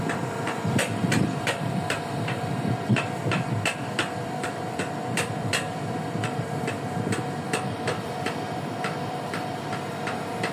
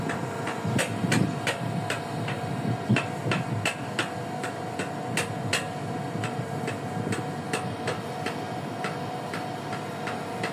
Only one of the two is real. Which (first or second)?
second